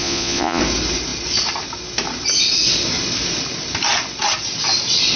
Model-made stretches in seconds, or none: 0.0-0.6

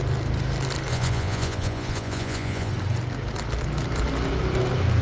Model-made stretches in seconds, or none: 0.9-2.7

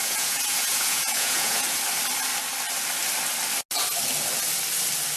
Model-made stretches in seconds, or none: 0.0-1.8

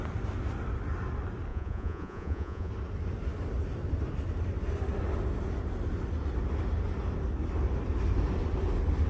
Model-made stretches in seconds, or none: 1.5-2.7

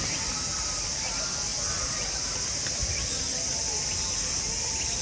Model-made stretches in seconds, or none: none

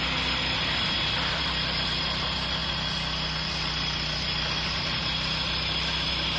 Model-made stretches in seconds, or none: none